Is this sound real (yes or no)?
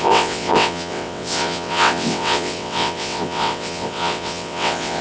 no